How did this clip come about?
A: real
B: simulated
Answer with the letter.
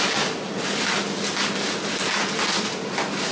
A